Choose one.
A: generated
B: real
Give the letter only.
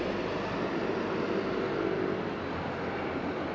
B